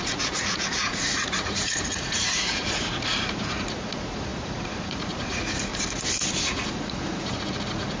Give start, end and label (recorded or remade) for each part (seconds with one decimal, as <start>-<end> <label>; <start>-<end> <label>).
0.0-5.7 remade; 5.7-6.3 recorded; 6.3-8.0 remade